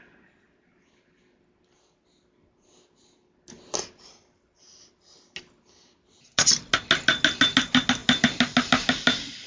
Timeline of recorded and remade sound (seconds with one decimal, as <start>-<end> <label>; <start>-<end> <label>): 0.0-9.5 recorded